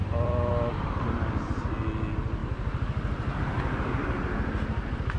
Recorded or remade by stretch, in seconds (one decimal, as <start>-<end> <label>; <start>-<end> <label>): 0.0-0.5 remade; 0.5-5.2 recorded